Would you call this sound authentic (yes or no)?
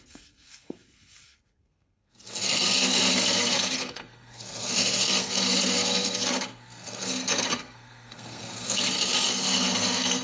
no